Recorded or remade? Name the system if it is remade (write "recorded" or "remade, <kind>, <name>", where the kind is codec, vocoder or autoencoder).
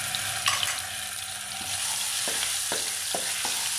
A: recorded